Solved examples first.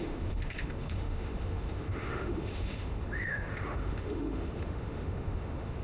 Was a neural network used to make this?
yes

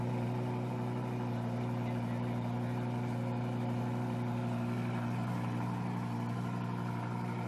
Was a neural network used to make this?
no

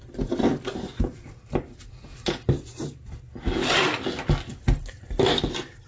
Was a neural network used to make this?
no